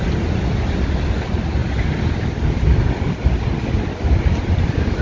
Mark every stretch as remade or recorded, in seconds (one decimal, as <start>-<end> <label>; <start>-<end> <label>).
0.0-5.0 recorded